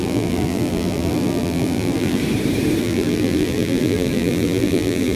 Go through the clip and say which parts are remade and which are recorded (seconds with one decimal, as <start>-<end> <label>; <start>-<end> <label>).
0.0-2.2 remade; 2.2-2.8 recorded; 2.8-5.2 remade